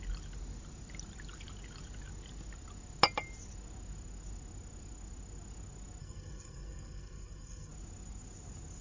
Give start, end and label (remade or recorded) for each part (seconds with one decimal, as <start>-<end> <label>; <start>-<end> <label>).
0.0-6.0 recorded; 6.0-7.7 remade; 7.7-8.8 recorded